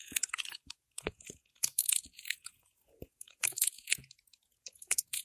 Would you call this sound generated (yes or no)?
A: yes